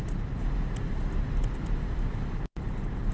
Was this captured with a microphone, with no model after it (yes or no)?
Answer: yes